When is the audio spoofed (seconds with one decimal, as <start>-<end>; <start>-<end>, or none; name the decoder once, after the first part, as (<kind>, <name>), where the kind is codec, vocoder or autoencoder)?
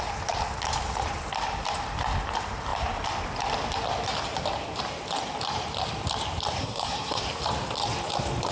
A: 6.6-7.2 (codec, SNAC)